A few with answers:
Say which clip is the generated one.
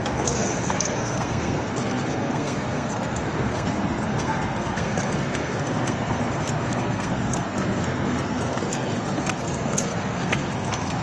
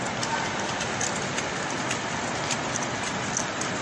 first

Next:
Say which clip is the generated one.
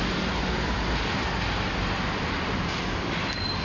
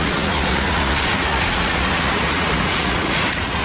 second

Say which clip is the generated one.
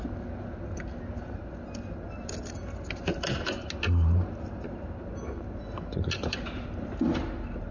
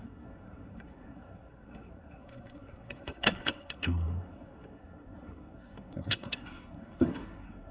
second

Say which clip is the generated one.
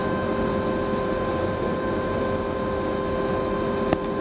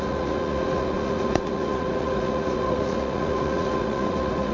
second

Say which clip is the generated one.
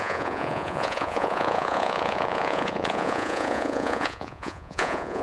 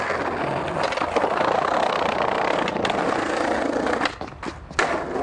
first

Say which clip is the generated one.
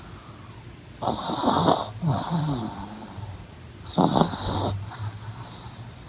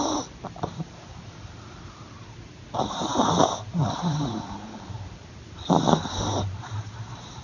second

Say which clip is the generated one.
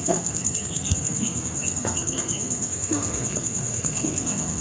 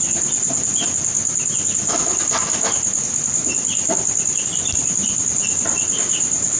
first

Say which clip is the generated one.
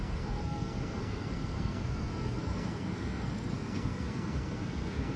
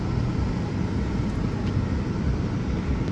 first